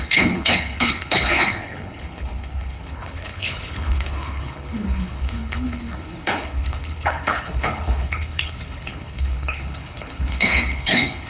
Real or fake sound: fake